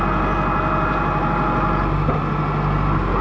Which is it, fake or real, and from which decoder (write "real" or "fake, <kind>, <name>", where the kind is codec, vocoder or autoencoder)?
real